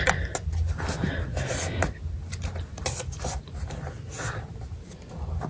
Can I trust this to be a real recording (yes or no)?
yes